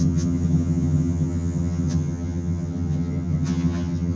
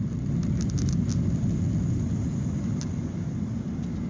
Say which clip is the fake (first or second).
first